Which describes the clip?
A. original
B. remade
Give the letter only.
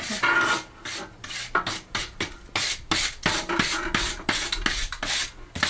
A